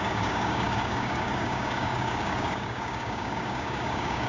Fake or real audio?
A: fake